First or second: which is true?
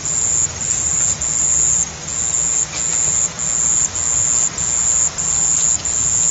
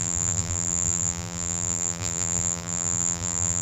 first